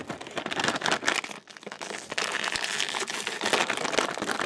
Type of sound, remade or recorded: recorded